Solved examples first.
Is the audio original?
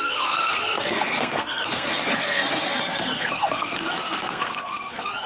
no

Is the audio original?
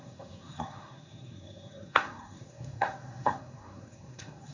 no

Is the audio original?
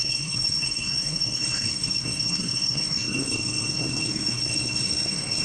no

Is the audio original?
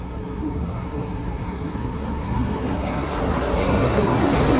no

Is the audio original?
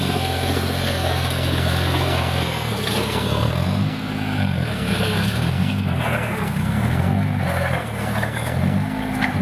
no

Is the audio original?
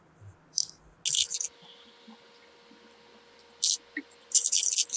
yes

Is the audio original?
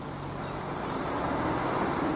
yes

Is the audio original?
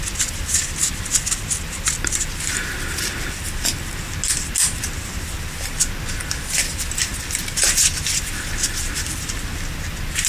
yes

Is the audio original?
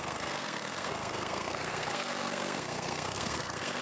no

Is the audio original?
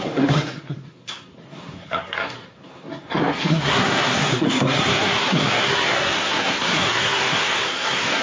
no